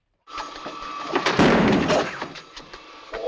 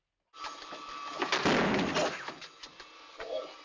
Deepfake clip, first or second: first